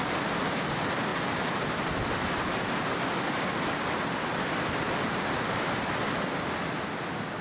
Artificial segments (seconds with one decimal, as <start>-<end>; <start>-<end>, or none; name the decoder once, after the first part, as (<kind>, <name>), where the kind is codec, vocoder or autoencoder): none